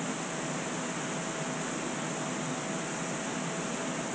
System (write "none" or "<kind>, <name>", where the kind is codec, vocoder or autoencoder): none